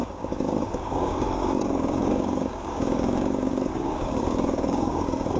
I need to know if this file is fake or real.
fake